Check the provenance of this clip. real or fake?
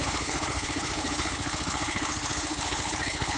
fake